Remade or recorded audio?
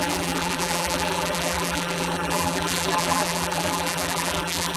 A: remade